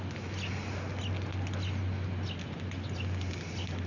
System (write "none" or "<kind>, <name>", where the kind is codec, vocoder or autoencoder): none